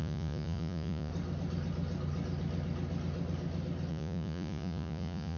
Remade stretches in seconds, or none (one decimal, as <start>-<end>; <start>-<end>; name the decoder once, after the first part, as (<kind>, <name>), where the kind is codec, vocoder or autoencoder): 0.0-1.1 (vocoder, Vocos); 3.9-5.4